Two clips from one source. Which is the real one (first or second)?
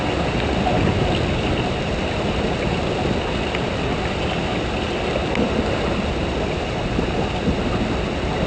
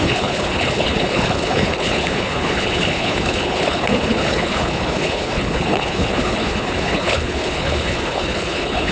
first